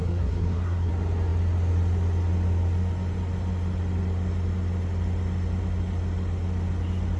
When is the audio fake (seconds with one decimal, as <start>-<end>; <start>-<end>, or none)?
0.0-0.9